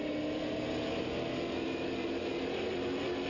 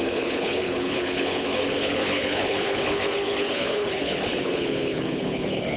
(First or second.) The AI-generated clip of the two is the second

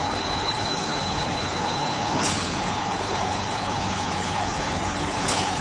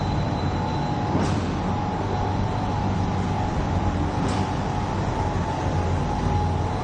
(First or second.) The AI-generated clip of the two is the first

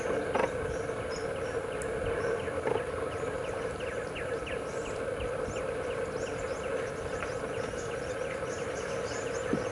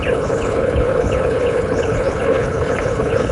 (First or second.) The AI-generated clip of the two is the second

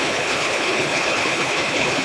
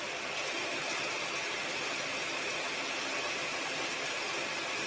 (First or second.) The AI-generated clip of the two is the first